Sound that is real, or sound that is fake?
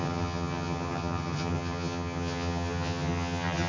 fake